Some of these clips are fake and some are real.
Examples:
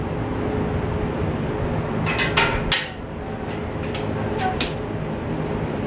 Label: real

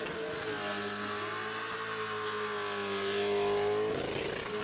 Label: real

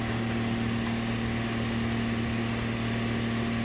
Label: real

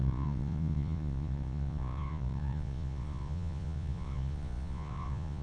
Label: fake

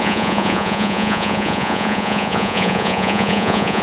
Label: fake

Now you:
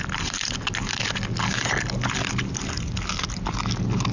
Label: real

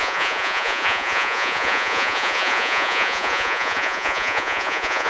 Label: fake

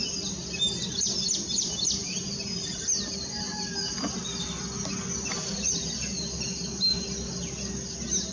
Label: real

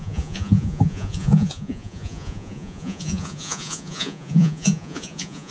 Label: fake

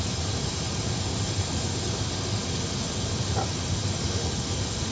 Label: real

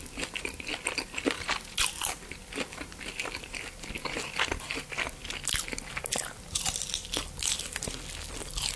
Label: real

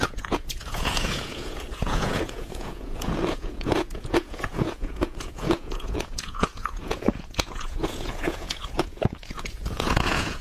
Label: fake